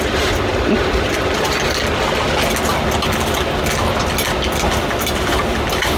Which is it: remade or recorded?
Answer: recorded